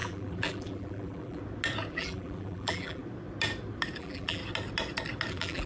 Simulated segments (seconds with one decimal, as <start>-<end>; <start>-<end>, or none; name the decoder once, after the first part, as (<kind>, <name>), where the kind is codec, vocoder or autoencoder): 0.0-1.4 (vocoder, BigVGAN v2); 1.9-3.0; 4.0-4.4; 5.3-5.7